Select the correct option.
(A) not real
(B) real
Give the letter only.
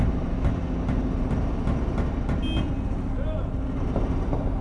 B